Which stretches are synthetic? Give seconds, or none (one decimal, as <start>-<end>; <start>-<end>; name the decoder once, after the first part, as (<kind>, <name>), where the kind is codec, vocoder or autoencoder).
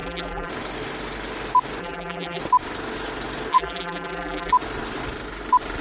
0.0-0.5 (vocoder, BigVGAN v2); 1.8-2.4; 3.5-4.5